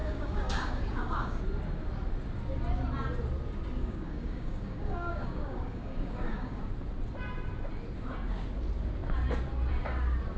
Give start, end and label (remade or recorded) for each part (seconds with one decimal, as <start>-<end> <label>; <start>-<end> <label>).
0.0-1.4 remade; 1.4-3.8 recorded; 3.8-6.6 remade; 6.6-10.4 recorded